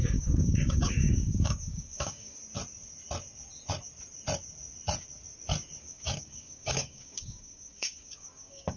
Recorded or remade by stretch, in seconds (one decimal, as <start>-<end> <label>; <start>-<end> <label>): 0.0-2.4 remade; 2.4-5.8 recorded; 5.8-8.8 remade